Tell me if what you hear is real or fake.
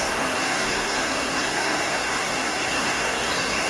fake